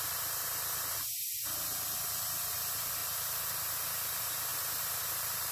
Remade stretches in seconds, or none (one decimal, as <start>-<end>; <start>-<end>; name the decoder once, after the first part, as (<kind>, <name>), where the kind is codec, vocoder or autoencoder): 0.0-1.2 (vocoder, BigVGAN v2); 2.5-5.5